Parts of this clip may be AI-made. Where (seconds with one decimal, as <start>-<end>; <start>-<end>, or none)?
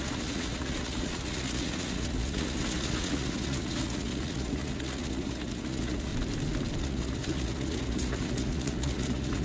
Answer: 0.0-6.1; 6.8-9.4